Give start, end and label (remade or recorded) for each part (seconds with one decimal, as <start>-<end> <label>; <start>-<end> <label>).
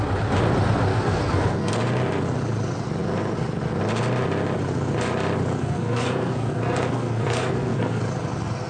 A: 0.0-0.9 recorded; 0.9-1.7 remade; 1.7-5.6 recorded; 5.6-8.0 remade; 8.0-8.7 recorded